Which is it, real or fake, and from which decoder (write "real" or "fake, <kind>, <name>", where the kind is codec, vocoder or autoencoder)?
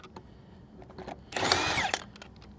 real